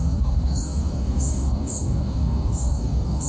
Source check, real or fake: fake